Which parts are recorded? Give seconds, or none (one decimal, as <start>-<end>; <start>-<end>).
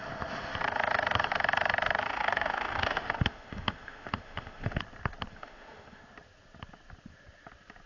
0.0-2.1; 4.8-5.3; 6.0-7.9